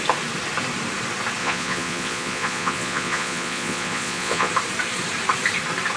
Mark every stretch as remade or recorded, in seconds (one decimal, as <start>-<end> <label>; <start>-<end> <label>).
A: 0.0-1.4 recorded; 1.4-4.5 remade; 4.5-6.0 recorded

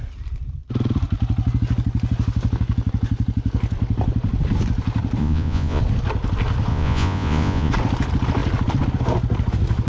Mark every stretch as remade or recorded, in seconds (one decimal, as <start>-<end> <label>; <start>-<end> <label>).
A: 0.0-5.2 recorded; 5.2-5.8 remade; 5.8-6.7 recorded; 6.7-7.7 remade; 7.7-9.9 recorded